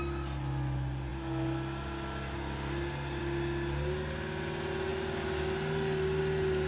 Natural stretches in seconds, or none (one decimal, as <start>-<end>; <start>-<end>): 0.0-6.7